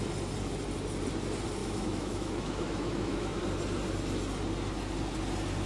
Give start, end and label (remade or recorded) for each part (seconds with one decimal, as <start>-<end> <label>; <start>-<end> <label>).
0.0-1.6 recorded; 1.6-3.4 remade; 3.4-5.7 recorded